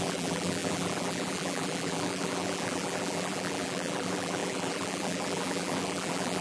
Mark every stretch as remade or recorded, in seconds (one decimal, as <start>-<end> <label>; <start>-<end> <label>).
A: 0.0-6.4 remade